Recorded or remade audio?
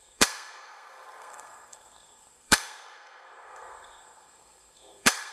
remade